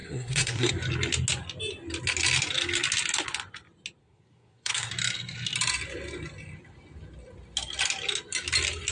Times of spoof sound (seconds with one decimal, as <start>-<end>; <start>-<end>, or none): 0.0-0.7; 4.0-4.9